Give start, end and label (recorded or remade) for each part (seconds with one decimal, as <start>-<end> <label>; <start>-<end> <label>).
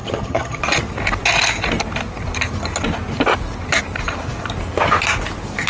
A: 0.0-0.6 remade; 0.6-5.7 recorded